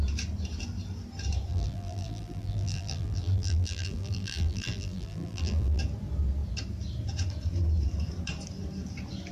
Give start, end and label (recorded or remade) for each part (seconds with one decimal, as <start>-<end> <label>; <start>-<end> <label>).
0.0-1.5 recorded; 1.5-5.8 remade; 5.8-9.3 recorded